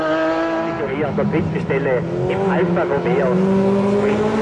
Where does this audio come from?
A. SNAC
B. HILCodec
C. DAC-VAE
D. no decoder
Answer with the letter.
D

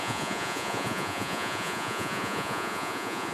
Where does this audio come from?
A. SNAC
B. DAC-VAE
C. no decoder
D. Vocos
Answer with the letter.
D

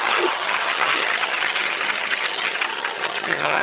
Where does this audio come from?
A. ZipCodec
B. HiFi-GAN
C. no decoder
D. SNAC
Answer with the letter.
B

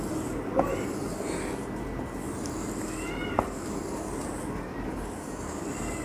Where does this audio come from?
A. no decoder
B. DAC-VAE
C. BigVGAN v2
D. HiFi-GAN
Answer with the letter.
A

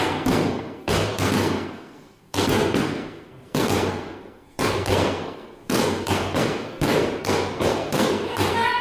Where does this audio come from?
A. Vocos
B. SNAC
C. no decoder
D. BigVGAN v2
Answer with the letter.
B